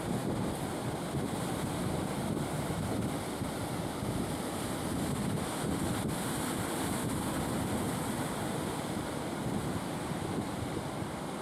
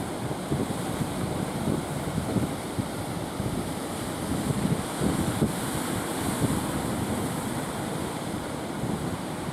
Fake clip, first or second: second